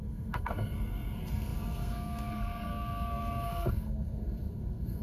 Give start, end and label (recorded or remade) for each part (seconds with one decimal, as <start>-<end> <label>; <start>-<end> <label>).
0.0-5.0 remade